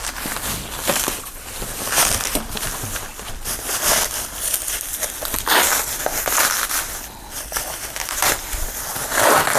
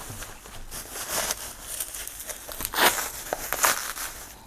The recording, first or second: second